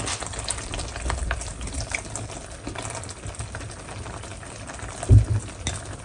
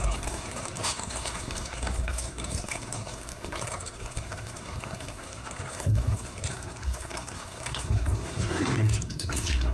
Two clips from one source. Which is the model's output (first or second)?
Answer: second